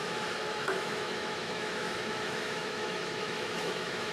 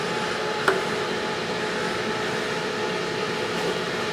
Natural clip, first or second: second